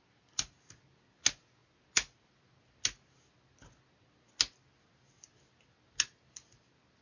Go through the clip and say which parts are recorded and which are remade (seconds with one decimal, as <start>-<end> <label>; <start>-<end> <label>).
0.0-7.0 recorded